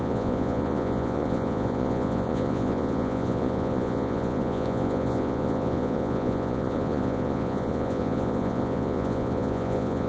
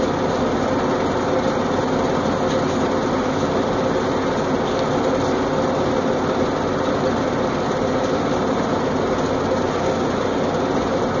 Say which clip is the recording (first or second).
second